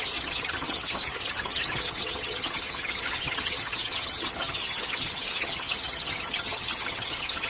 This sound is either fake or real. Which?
fake